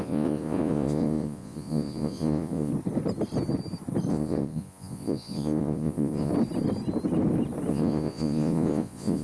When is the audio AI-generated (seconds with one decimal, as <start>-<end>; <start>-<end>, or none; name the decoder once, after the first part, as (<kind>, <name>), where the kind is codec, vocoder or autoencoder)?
0.0-2.7 (vocoder, Vocos); 4.1-6.3; 7.7-9.2